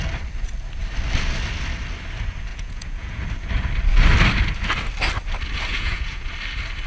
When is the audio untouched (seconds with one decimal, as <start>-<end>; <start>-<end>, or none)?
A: 0.0-2.5; 3.2-5.7; 6.3-6.9